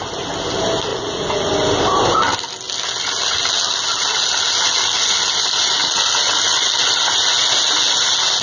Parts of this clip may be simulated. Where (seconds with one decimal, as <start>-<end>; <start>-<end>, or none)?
0.9-1.5